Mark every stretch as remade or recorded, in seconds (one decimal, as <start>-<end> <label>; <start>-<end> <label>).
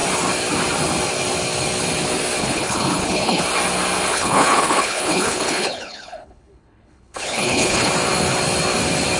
0.0-2.4 recorded; 2.4-3.4 remade; 3.4-4.1 recorded; 4.1-7.9 remade; 7.9-9.2 recorded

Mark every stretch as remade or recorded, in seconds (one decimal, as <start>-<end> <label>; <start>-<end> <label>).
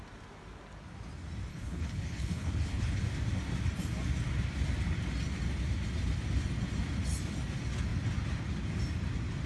0.0-1.5 recorded; 1.5-3.0 remade; 3.0-9.5 recorded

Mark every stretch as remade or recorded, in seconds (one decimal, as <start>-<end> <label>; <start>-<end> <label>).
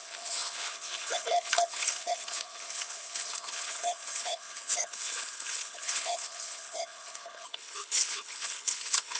0.0-9.2 remade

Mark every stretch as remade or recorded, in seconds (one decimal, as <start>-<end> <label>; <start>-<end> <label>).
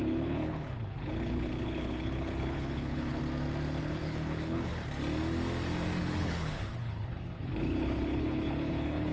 0.0-3.2 remade; 3.2-3.8 recorded; 3.8-4.7 remade; 4.7-6.0 recorded; 6.0-9.1 remade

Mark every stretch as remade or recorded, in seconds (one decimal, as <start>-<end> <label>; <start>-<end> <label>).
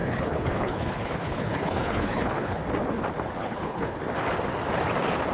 0.0-2.6 remade; 2.6-3.4 recorded; 3.4-4.0 remade; 4.0-5.3 recorded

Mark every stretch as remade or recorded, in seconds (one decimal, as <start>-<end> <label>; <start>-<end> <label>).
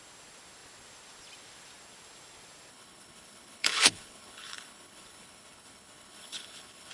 0.0-2.7 recorded; 2.7-6.9 remade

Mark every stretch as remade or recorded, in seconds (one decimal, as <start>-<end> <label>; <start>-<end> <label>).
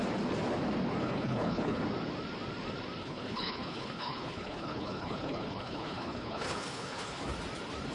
0.0-1.0 recorded; 1.0-1.8 remade; 1.8-3.0 recorded; 3.0-7.2 remade; 7.2-7.9 recorded